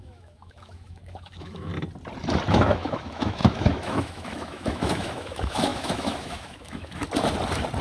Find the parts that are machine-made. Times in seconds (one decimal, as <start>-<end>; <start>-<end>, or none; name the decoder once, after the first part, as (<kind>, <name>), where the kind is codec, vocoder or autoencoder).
0.0-1.7 (autoencoder, DAC-VAE); 2.5-7.0